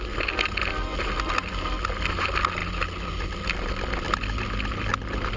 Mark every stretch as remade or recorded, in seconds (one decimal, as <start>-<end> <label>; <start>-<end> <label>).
0.0-5.4 recorded